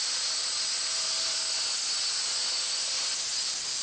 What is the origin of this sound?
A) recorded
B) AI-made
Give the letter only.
A